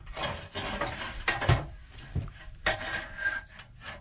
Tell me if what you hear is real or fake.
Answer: real